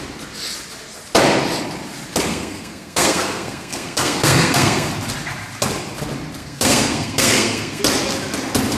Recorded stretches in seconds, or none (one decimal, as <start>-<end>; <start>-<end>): 0.0-2.3; 4.9-6.4; 7.8-8.8